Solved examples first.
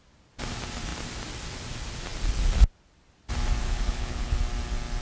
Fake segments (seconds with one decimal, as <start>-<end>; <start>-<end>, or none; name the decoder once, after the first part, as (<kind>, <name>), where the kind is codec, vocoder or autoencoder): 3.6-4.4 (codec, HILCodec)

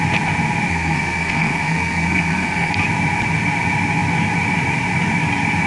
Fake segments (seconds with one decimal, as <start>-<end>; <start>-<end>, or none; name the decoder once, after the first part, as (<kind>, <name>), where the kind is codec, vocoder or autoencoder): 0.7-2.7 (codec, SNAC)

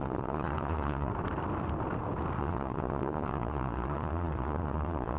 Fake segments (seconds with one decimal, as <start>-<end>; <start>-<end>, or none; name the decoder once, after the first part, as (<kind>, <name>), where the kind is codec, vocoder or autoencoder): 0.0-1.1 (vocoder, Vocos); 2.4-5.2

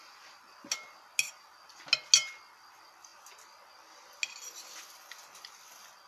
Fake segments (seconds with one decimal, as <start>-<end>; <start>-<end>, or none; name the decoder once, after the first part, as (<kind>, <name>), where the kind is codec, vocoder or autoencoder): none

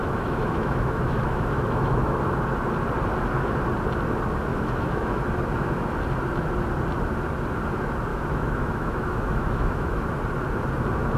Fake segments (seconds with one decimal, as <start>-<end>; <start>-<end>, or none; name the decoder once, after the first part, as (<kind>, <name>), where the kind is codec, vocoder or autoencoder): 0.0-2.2 (autoencoder, DAC-VAE); 4.5-5.2; 8.1-10.0

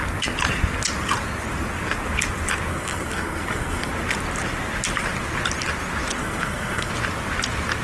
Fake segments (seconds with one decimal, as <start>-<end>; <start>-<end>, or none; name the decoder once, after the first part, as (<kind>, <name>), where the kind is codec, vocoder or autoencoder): 2.7-3.9 (codec, SNAC); 6.2-6.9